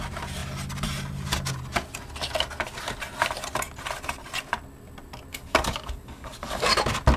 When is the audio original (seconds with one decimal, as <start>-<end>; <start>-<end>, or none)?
0.0-5.3; 6.8-7.2